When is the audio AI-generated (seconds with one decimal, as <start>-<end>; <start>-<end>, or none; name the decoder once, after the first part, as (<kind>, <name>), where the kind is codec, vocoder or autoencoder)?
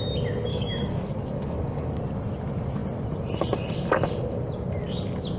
0.5-2.0 (codec, DAC)